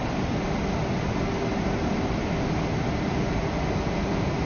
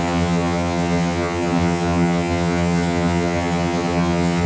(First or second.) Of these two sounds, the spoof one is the second